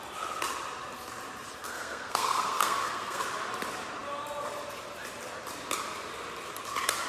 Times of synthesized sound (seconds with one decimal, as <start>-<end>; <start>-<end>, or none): 1.6-3.2